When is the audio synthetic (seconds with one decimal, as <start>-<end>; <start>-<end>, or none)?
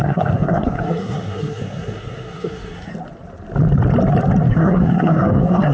0.0-2.9; 4.5-5.7